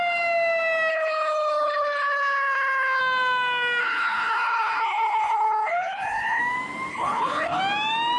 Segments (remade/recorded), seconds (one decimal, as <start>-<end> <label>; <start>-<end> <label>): 0.0-0.9 recorded; 0.9-3.0 remade; 3.0-3.8 recorded; 3.8-6.4 remade; 6.4-6.9 recorded; 6.9-7.6 remade; 7.6-8.2 recorded